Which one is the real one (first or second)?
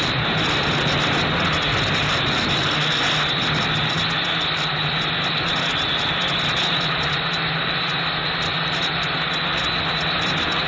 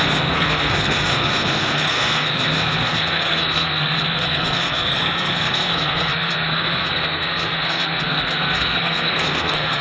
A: first